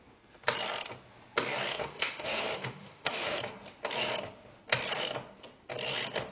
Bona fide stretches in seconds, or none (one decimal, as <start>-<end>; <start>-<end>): 0.0-1.7; 3.4-6.3